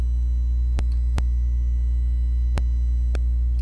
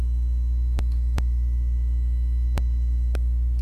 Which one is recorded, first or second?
first